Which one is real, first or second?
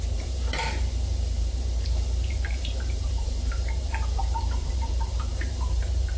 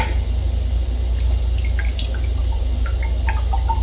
second